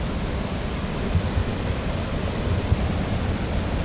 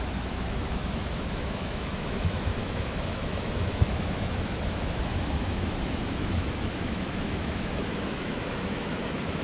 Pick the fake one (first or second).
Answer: second